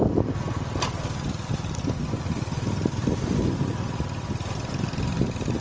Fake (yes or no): no